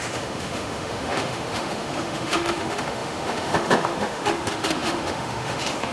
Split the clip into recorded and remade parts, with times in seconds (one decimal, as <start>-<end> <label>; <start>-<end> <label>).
0.0-5.9 remade